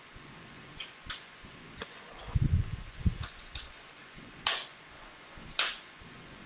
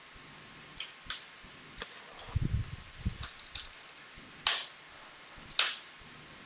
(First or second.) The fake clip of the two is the first